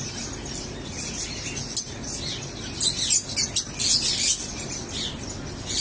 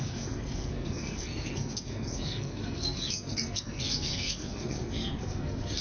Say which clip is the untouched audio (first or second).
first